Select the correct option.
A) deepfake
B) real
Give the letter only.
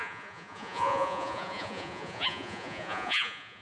A